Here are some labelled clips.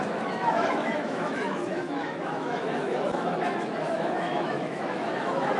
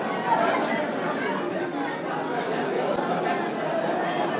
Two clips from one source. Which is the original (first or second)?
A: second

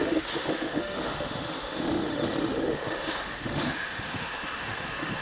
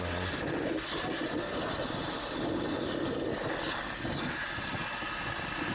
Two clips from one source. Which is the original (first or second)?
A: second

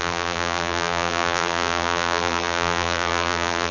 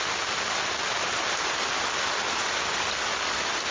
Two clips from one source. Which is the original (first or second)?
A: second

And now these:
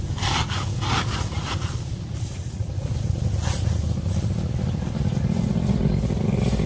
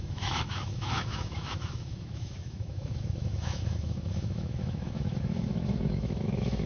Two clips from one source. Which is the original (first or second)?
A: first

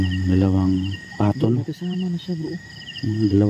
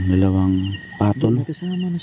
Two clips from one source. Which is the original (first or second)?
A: second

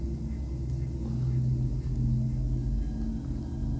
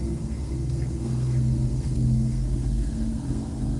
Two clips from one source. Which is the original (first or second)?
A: first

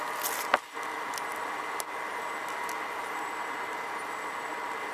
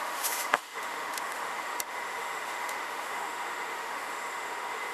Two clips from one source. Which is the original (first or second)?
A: first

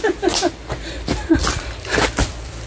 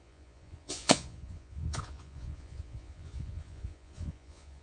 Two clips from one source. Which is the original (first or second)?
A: first